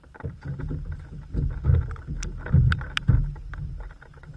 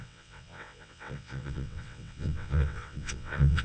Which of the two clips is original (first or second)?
first